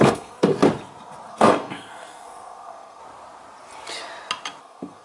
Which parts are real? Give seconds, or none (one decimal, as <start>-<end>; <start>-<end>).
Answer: 0.5-1.3; 3.0-4.6